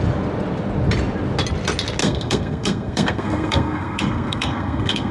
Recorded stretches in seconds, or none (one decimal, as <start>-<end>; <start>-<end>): 0.0-2.0